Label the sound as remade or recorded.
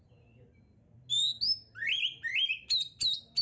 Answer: recorded